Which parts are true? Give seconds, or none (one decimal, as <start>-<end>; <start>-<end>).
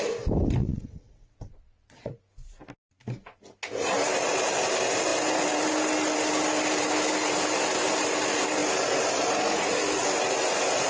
0.0-0.6; 2.1-10.9